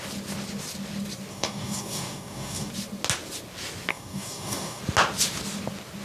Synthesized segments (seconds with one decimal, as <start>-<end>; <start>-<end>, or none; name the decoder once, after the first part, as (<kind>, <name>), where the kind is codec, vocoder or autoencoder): 1.3-2.7 (codec, DAC); 3.9-4.8

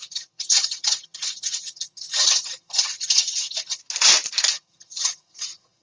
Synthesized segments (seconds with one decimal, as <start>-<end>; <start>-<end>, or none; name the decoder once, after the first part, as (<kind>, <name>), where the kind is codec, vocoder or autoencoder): 0.0-3.8 (vocoder, HiFi-GAN); 4.5-5.8

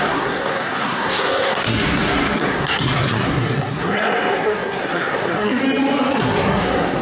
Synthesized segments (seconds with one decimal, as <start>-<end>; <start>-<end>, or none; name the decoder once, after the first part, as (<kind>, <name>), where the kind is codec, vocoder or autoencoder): 0.0-5.6 (codec, SNAC); 6.1-7.0